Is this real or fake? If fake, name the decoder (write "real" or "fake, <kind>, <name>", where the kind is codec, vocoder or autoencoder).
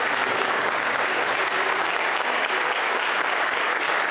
fake, codec, DAC